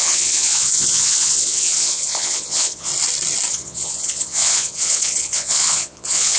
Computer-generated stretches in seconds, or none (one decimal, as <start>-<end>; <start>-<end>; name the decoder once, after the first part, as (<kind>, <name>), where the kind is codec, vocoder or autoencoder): 0.0-2.9 (vocoder, Vocos); 3.5-6.4